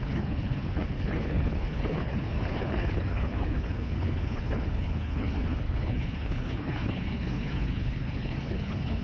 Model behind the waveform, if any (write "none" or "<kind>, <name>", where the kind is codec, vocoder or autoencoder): codec, HILCodec